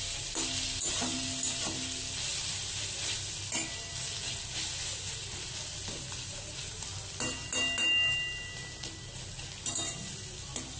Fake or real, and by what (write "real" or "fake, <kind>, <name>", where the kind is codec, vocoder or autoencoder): real